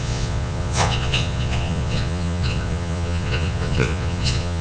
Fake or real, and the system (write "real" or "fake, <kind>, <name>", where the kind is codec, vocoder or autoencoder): fake, vocoder, Vocos